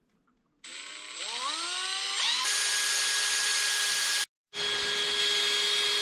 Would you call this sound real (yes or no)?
yes